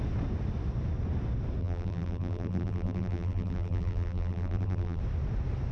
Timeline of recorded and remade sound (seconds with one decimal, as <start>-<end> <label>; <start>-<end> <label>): 0.0-1.6 recorded; 1.6-5.0 remade; 5.0-5.7 recorded